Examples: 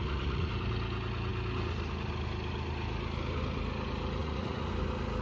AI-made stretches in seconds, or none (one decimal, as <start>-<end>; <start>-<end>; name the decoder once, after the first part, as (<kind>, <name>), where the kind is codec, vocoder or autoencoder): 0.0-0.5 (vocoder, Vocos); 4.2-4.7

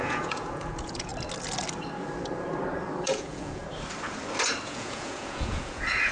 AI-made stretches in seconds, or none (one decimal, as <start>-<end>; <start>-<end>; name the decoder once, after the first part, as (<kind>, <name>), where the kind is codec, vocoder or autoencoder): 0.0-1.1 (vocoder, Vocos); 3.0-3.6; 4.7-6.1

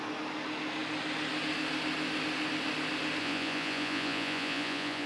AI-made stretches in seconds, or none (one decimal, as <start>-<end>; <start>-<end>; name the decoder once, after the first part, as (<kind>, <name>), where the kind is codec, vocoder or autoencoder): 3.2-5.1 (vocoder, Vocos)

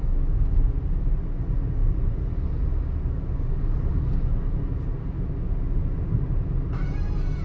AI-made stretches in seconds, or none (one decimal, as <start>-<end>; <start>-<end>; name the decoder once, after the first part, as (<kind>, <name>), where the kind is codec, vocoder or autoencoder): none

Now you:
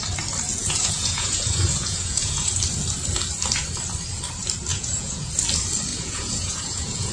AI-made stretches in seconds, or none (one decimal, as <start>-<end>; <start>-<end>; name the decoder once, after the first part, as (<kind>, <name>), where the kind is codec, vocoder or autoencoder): 0.5-2.5 (vocoder, Vocos); 4.7-5.3; 5.9-7.1

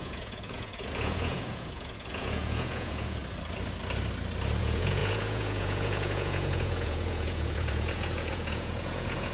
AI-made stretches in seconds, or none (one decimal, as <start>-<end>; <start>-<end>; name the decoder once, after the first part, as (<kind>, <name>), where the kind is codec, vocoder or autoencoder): 0.0-3.2 (vocoder, Vocos); 4.6-9.3

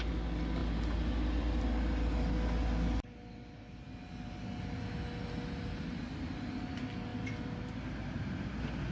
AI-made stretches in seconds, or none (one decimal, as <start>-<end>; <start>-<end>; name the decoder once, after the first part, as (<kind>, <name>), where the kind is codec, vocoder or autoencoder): none

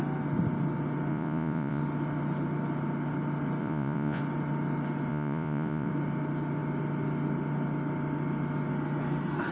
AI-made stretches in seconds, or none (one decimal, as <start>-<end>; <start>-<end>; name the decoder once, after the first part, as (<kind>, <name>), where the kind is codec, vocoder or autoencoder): 1.1-1.8 (vocoder, Vocos); 3.6-4.2; 5.1-5.9